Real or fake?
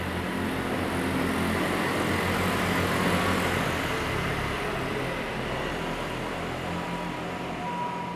real